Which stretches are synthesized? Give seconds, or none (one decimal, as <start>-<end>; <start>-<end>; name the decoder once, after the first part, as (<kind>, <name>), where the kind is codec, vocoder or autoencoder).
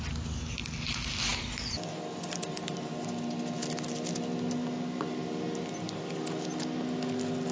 none